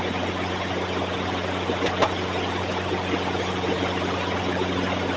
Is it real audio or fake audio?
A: real